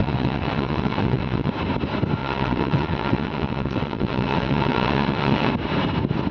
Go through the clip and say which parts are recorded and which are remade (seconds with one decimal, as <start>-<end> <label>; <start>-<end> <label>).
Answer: 0.0-1.5 remade; 1.5-2.2 recorded; 2.2-5.5 remade; 5.5-6.3 recorded